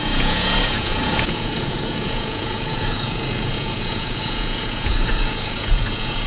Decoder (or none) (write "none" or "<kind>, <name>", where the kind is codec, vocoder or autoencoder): vocoder, Vocos